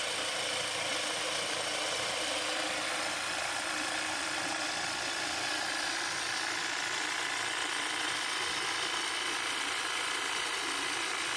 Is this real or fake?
real